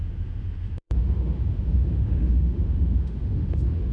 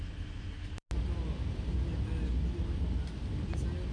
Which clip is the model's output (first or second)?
first